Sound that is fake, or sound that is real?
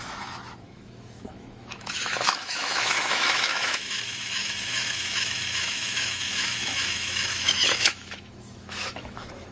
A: fake